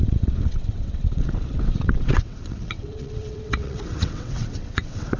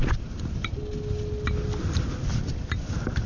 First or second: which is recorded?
second